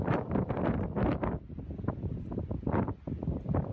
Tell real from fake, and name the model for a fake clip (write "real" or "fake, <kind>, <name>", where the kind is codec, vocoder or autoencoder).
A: real